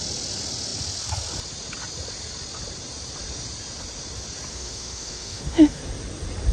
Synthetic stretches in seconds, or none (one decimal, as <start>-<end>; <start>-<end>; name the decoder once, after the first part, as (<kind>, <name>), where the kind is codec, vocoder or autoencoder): 4.5-5.8 (autoencoder, DAC-VAE)

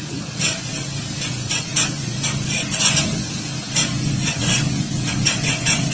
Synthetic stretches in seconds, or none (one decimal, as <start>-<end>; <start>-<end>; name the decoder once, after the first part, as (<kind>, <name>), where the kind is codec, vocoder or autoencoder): 0.0-0.7 (vocoder, Vocos); 1.2-5.9

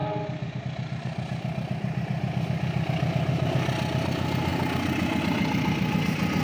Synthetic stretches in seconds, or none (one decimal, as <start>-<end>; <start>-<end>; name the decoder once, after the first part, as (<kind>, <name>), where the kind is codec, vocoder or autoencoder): none

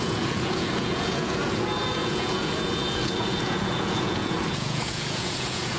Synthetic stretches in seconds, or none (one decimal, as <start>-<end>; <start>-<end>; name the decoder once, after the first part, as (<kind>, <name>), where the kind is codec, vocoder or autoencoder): 0.0-5.8 (vocoder, Vocos)

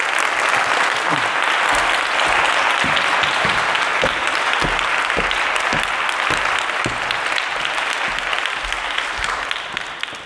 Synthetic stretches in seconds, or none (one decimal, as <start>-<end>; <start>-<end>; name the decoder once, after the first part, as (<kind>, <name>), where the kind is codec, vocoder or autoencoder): none

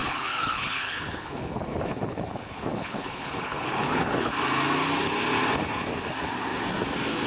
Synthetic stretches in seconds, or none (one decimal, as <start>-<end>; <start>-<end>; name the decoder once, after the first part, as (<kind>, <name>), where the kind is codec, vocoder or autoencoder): 0.0-4.3 (codec, HILCodec)